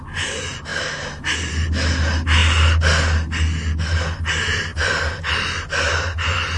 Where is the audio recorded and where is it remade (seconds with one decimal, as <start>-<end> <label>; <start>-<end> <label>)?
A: 0.0-4.7 recorded; 4.7-5.3 remade; 5.3-6.6 recorded